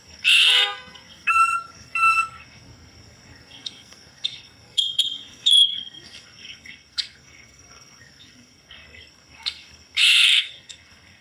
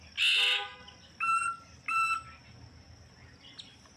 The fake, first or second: first